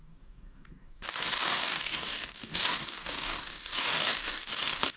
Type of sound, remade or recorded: remade